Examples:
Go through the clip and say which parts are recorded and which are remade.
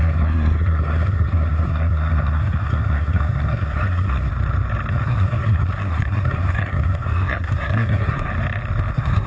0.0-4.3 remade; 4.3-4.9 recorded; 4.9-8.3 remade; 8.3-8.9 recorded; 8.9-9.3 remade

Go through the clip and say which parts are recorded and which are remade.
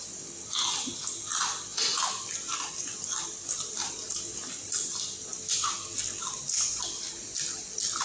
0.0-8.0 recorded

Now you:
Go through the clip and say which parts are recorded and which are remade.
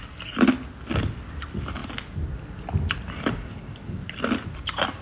0.0-5.0 recorded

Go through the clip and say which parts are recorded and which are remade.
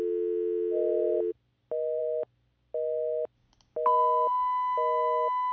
0.0-5.5 recorded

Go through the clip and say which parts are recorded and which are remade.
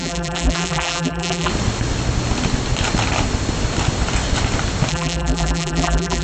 0.0-1.5 remade; 1.5-4.9 recorded; 4.9-6.2 remade